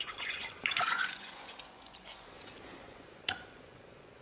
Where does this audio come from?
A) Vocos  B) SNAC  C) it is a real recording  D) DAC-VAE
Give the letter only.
A